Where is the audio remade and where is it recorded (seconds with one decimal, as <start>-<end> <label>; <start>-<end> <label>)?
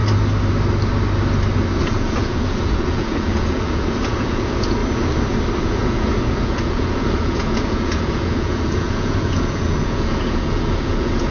0.0-1.8 recorded; 1.8-4.8 remade; 4.8-5.6 recorded; 5.6-11.3 remade